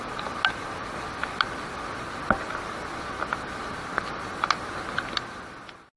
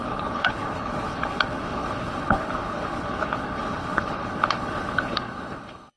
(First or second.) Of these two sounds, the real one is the first